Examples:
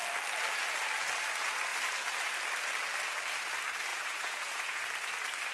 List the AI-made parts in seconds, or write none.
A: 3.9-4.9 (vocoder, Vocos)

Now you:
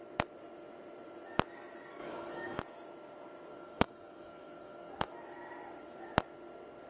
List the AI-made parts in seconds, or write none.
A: 2.0-2.6 (codec, DAC); 3.5-5.2

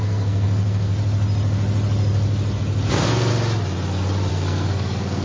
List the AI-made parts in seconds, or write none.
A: 0.0-0.9 (codec, SNAC); 2.9-3.3; 4.3-5.2

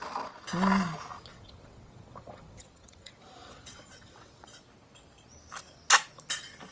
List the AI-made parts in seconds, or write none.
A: 1.3-3.2 (vocoder, WaveNeXt); 3.6-4.5

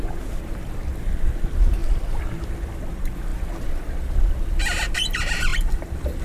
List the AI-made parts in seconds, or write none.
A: none

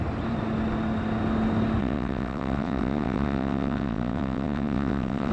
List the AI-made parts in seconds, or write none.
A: 1.8-5.3 (vocoder, WaveNeXt)

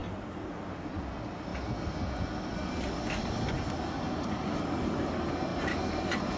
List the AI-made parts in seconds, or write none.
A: 0.0-0.6 (vocoder, BigVGAN v2); 5.5-6.4